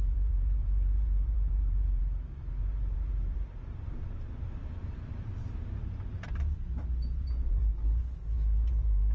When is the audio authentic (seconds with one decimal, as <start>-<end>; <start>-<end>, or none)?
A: 2.0-2.6

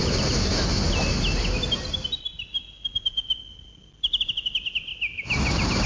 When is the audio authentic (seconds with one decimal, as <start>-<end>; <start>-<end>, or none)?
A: 0.0-5.9

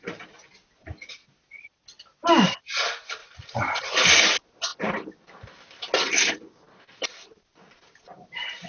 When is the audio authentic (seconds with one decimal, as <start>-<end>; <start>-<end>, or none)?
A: 0.0-3.2; 3.8-8.7

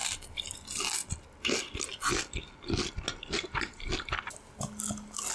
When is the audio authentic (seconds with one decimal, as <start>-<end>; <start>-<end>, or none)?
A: 0.0-5.3

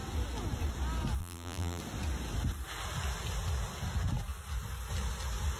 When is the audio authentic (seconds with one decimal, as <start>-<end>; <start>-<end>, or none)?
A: 0.0-1.2; 1.8-5.6

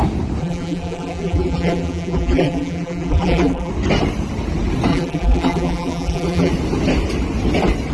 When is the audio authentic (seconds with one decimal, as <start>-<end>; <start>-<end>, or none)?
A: 0.0-0.4; 3.7-4.9; 6.5-7.9

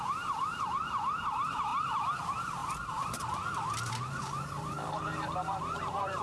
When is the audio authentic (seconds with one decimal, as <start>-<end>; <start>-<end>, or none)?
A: 1.7-2.2; 2.6-3.9

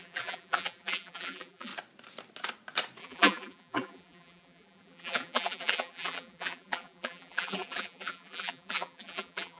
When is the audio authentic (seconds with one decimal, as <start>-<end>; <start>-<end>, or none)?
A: 1.7-3.0